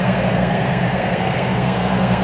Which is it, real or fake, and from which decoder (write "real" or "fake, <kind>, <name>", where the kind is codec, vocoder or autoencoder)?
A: fake, codec, SNAC